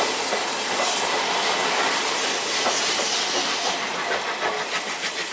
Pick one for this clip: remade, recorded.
recorded